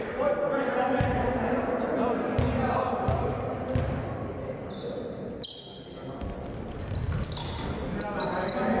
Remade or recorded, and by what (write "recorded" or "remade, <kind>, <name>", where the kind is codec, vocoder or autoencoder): recorded